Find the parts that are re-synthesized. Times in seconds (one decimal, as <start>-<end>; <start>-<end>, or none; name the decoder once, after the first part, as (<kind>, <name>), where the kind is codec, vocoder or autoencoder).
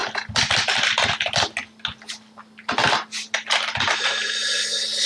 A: none